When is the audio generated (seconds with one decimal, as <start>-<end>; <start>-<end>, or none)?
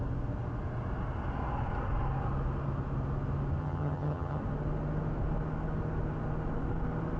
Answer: 3.6-4.4